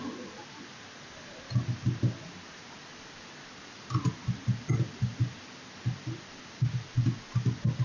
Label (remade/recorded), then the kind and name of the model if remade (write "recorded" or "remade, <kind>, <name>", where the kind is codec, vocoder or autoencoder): recorded